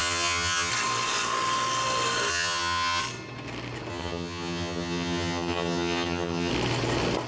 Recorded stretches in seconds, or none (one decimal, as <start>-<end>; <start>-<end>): 0.7-2.3; 3.0-3.9; 6.5-7.3

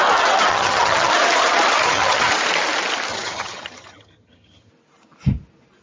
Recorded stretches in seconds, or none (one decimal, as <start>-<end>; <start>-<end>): 0.0-0.5; 1.1-1.8; 2.3-3.1; 4.7-5.8

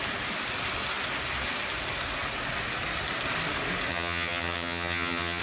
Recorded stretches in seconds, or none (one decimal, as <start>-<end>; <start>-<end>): 0.0-3.9